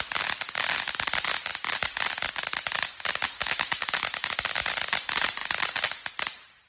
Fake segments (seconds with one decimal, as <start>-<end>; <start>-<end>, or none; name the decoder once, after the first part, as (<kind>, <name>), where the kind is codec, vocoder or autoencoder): 3.4-4.3 (autoencoder, DAC-VAE)